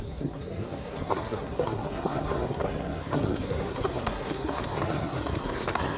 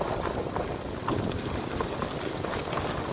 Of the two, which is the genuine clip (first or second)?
second